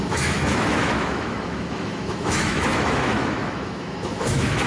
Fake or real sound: fake